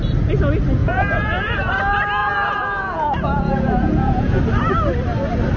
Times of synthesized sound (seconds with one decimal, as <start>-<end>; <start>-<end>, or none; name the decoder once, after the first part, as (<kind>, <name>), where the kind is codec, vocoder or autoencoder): 0.8-1.7 (vocoder, Vocos); 2.2-4.4